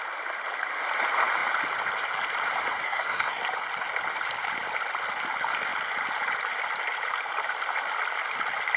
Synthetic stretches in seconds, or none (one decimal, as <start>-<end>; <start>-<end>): 2.8-3.4